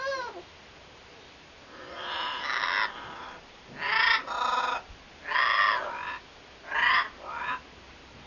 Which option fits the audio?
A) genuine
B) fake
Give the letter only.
A